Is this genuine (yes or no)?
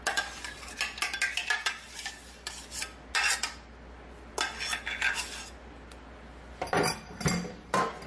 yes